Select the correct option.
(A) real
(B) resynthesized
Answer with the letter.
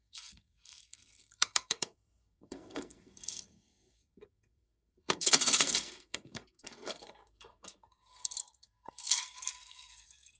B